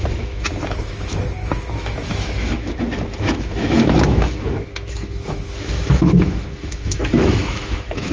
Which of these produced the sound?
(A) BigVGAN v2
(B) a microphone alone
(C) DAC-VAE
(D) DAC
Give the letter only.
C